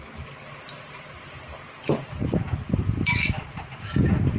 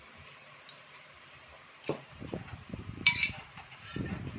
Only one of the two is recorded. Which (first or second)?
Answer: first